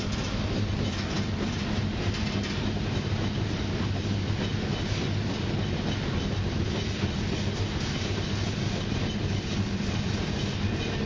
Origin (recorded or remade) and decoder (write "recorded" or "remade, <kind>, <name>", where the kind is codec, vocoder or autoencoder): recorded